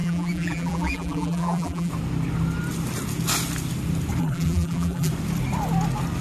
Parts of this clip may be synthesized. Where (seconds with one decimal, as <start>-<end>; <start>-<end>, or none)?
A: 0.0-1.9; 4.2-5.1